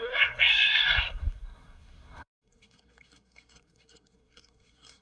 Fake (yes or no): yes